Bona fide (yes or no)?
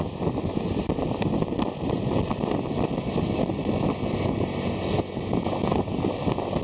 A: yes